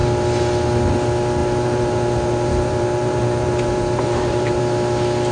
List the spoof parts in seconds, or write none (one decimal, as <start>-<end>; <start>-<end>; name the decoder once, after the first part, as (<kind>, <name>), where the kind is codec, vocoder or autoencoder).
1.4-4.6 (vocoder, BigVGAN v2)